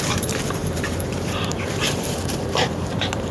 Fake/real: fake